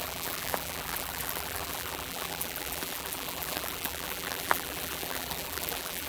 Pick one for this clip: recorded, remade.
remade